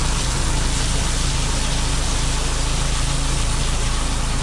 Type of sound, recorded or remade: recorded